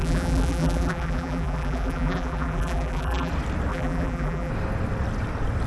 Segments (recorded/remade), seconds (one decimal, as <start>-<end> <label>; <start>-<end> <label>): 0.0-3.3 remade; 3.3-3.7 recorded; 3.7-4.5 remade; 4.5-5.7 recorded